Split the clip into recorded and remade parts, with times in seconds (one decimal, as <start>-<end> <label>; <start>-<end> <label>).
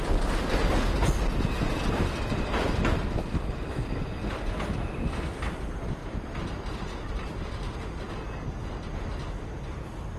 0.0-6.0 recorded; 6.0-8.1 remade; 8.1-10.2 recorded